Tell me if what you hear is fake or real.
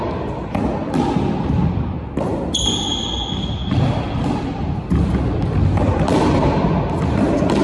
real